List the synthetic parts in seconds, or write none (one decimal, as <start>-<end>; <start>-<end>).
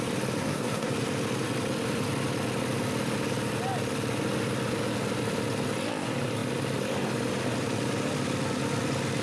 0.4-0.9